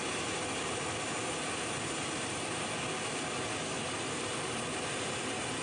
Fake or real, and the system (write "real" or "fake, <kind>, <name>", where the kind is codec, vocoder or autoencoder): real